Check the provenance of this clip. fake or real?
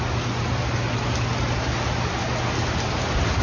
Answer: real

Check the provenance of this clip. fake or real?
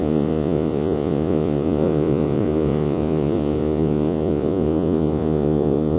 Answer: fake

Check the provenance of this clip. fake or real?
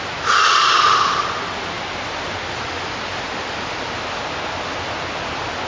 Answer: real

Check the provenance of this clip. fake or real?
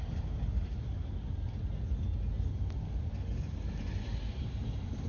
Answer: real